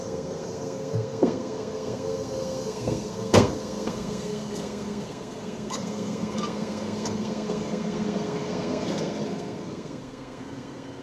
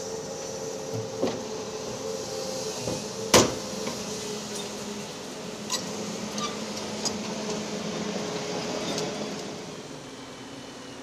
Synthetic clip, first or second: first